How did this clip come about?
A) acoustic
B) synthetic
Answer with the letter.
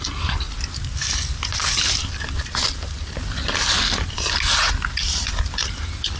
A